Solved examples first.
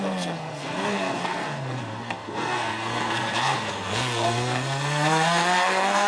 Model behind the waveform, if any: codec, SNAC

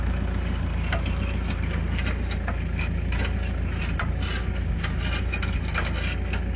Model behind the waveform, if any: none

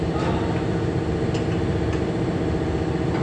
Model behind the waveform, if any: none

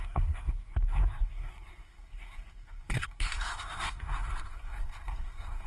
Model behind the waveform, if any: codec, SNAC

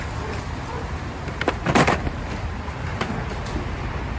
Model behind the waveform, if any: none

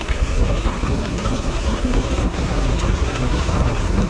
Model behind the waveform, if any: codec, SNAC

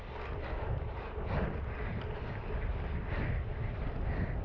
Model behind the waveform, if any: none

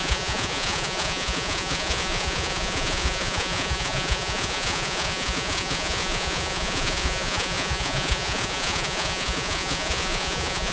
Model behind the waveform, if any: vocoder, Vocos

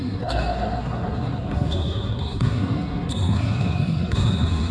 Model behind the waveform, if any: codec, SNAC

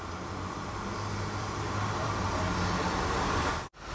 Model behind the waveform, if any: vocoder, BigVGAN v2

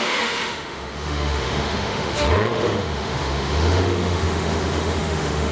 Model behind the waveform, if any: autoencoder, DAC-VAE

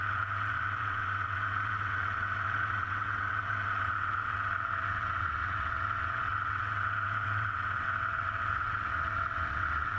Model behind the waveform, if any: vocoder, WaveNeXt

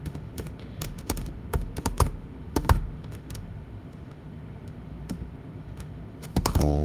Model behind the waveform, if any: autoencoder, DAC-VAE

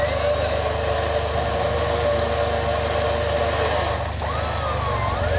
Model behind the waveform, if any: none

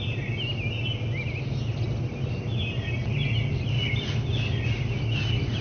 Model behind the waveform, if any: none